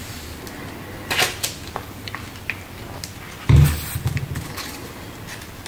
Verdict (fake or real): real